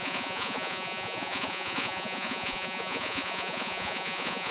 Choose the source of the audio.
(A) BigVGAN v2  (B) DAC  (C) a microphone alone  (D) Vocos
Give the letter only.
D